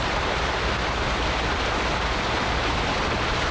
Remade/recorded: recorded